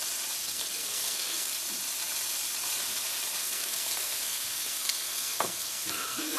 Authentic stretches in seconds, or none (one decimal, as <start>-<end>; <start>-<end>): 0.0-0.4; 1.5-3.4